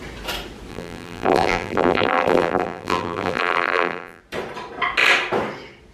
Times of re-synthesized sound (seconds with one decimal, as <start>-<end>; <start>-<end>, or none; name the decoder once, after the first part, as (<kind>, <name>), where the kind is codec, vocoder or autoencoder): 0.7-4.2 (vocoder, BigVGAN v2)